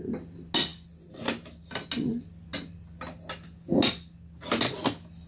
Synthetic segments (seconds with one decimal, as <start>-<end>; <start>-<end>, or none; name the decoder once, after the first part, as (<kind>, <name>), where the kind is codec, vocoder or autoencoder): none